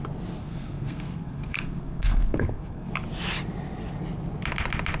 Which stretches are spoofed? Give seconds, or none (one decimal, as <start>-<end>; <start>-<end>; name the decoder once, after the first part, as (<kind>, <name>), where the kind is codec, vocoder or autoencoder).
0.4-2.9 (codec, SNAC)